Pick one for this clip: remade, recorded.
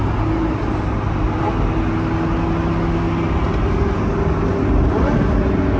recorded